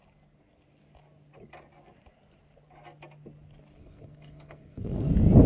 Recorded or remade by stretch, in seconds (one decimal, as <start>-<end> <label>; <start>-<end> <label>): 0.0-3.8 recorded; 3.8-5.1 remade; 5.1-5.5 recorded